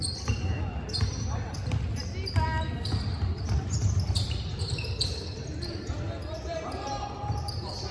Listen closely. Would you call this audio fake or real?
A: real